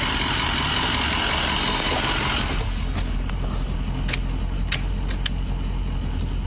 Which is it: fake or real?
real